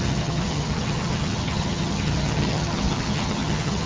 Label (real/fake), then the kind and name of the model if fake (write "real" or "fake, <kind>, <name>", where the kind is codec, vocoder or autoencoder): fake, vocoder, HiFi-GAN